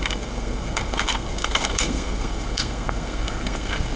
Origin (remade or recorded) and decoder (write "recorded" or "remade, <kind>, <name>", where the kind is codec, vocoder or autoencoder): remade, codec, SNAC